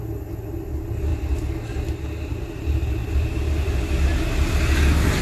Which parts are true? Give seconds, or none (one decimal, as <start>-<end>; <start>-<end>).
0.0-5.2

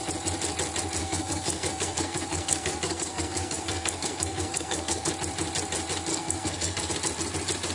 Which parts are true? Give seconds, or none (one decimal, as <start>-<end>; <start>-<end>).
0.0-1.0; 5.1-6.1; 6.9-7.7

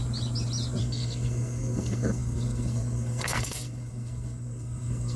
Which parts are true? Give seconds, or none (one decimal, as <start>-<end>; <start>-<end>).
0.0-0.8

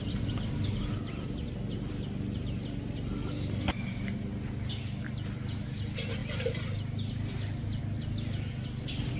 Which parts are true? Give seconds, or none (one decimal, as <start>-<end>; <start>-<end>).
0.0-9.2

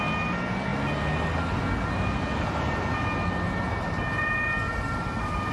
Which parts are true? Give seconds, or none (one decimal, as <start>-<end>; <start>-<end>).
0.0-5.5